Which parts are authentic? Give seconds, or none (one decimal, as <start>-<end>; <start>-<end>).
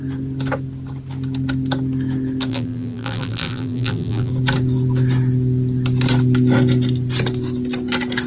0.0-2.5; 4.3-8.3